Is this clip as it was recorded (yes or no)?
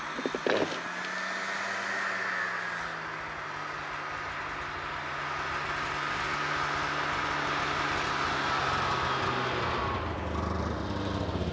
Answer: yes